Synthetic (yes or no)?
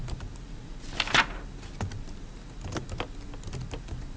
no